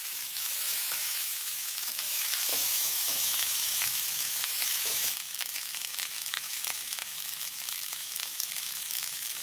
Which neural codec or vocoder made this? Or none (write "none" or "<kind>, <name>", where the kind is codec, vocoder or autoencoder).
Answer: autoencoder, DAC-VAE